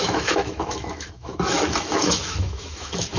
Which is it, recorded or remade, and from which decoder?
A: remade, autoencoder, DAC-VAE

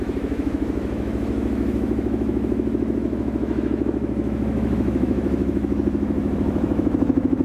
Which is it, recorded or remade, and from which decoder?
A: remade, autoencoder, DAC-VAE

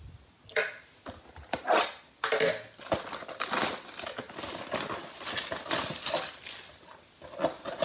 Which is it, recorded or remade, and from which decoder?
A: recorded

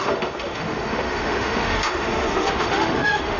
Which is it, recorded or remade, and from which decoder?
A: remade, autoencoder, DAC-VAE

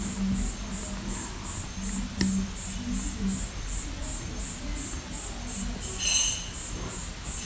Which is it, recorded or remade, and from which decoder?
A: recorded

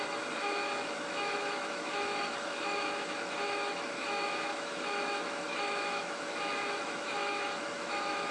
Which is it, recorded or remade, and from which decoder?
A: remade, autoencoder, DAC-VAE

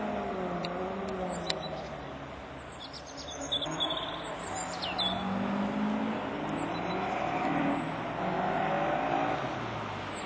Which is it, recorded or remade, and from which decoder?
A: recorded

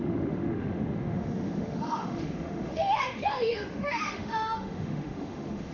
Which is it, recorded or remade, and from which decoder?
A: remade, autoencoder, DAC-VAE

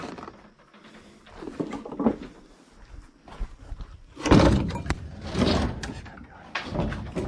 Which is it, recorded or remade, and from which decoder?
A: recorded